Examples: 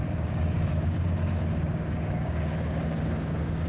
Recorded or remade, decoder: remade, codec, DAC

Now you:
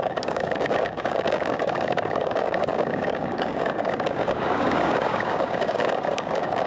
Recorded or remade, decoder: remade, codec, DAC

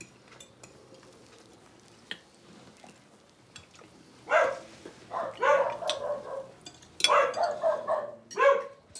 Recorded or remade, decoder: recorded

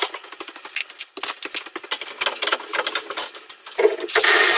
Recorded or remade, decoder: recorded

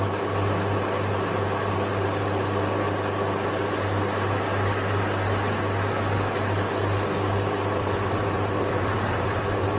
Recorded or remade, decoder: recorded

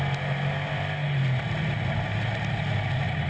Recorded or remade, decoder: recorded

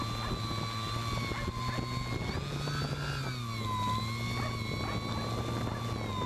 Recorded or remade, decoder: recorded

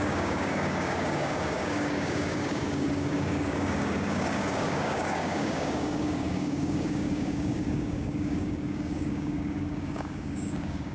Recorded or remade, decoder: remade, codec, DAC